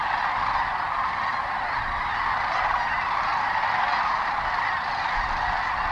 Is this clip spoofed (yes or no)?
no